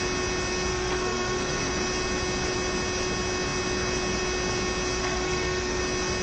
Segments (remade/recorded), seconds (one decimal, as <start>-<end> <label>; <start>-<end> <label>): 0.0-0.7 recorded; 0.7-1.7 remade; 1.7-5.0 recorded; 5.0-5.8 remade; 5.8-6.2 recorded